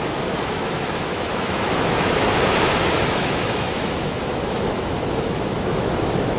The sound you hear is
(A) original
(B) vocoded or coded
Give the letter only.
B